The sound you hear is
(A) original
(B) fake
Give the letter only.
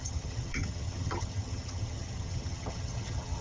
B